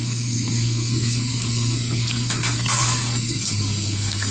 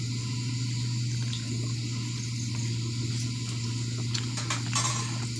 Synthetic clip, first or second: first